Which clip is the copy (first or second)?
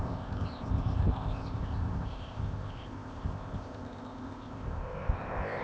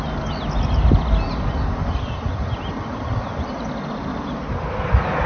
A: first